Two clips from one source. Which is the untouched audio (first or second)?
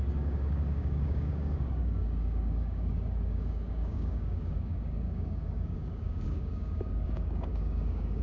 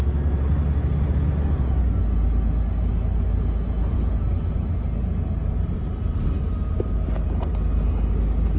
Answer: second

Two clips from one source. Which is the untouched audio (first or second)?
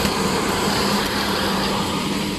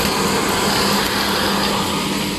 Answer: second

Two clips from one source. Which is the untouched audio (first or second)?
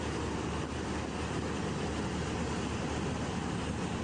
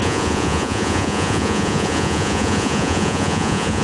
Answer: first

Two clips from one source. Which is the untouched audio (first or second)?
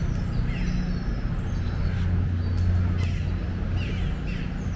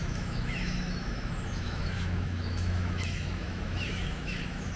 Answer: first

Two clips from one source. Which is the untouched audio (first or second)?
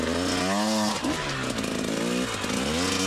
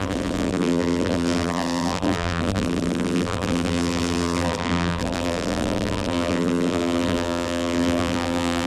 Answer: first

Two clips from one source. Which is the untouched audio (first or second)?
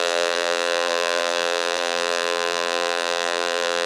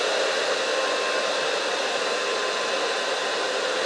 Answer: second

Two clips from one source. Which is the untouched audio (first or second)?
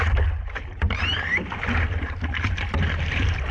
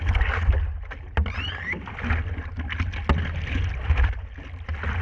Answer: second